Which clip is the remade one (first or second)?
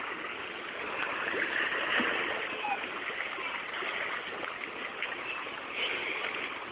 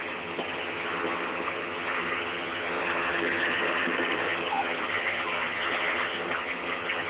second